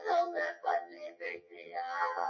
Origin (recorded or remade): remade